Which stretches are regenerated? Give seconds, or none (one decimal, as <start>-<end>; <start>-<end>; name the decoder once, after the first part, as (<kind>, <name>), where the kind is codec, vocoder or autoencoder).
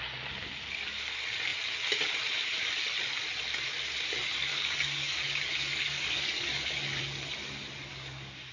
4.5-7.0 (codec, DAC); 7.9-8.5